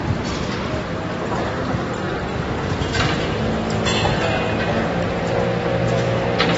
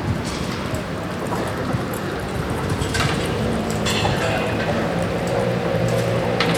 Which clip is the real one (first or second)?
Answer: first